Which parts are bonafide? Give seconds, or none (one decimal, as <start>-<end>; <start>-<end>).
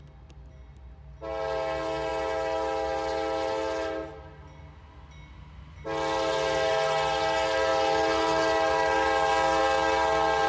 0.0-10.5